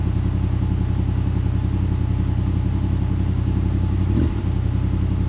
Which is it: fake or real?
real